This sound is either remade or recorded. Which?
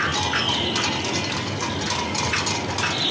recorded